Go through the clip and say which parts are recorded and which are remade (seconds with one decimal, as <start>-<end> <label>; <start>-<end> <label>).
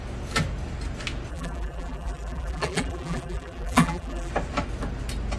0.0-1.3 recorded; 1.3-4.3 remade; 4.3-5.4 recorded